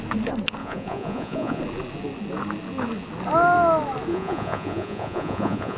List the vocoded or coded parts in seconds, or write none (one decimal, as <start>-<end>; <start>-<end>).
0.6-1.6; 4.1-5.8